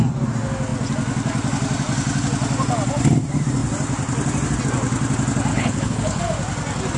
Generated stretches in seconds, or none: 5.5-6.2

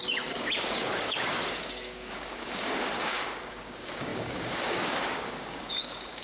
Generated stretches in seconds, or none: 0.0-6.2

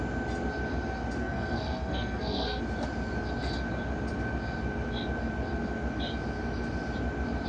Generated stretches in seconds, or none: 1.2-2.6

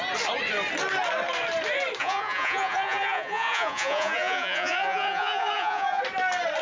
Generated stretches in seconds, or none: 2.0-6.0

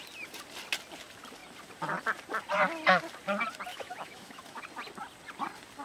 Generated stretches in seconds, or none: 3.7-4.6

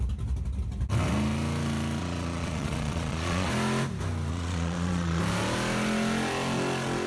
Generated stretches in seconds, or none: 2.0-3.5; 4.3-5.2

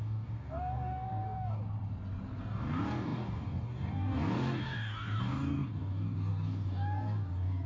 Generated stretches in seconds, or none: 0.0-1.6; 2.4-7.7

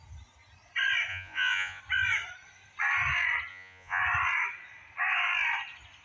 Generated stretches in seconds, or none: 1.1-1.8; 3.5-4.0